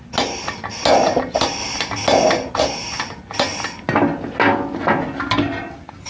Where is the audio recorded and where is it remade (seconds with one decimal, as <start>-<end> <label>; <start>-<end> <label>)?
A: 0.0-6.1 recorded